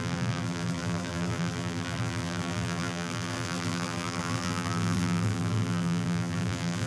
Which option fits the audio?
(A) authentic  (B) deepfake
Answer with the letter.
B